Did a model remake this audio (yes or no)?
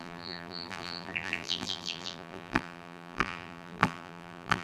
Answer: yes